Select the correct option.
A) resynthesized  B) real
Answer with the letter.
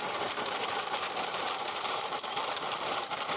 A